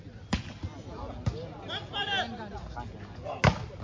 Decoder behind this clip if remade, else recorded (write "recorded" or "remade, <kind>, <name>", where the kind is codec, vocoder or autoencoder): recorded